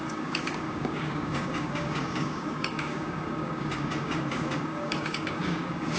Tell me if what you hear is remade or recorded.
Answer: remade